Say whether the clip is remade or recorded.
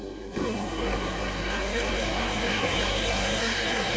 remade